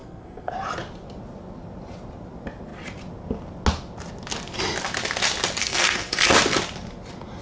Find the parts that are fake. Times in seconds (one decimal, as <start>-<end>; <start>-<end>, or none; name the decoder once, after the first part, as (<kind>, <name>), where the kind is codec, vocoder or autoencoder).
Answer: 0.0-0.5 (codec, SNAC); 5.6-6.3